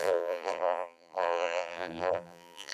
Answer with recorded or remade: remade